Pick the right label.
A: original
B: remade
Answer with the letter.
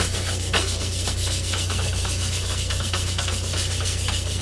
B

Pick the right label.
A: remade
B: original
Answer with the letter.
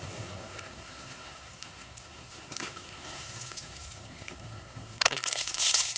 A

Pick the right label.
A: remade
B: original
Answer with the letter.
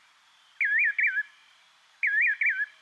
B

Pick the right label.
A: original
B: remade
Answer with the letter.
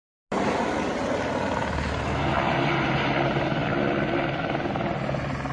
A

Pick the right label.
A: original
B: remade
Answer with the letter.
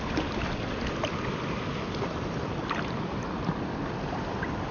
A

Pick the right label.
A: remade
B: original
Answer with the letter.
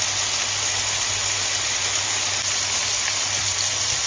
B